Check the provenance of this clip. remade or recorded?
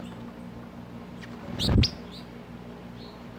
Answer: recorded